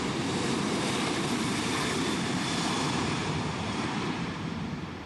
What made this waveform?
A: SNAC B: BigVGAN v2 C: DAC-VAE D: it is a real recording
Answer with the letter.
B